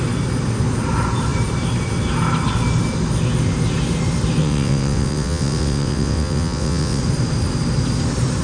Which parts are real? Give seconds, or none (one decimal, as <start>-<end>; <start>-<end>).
0.0-4.4; 7.0-8.4